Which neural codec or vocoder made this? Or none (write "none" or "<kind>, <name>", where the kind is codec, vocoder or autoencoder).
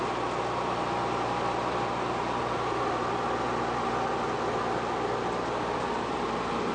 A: none